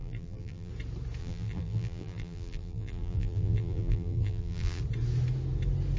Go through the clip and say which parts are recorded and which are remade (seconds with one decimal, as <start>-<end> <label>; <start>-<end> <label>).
0.0-0.7 remade; 0.7-1.2 recorded; 1.2-4.8 remade; 4.8-6.0 recorded